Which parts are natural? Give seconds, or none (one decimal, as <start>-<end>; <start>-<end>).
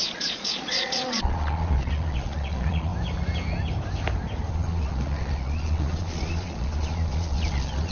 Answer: 2.9-4.5